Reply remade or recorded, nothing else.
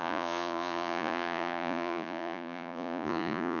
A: remade